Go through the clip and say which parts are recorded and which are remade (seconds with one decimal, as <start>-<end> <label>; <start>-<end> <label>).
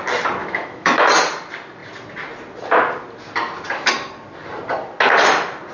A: 0.0-0.4 recorded; 0.4-1.1 remade; 1.1-5.7 recorded